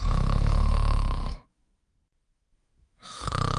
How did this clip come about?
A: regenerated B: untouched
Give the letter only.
A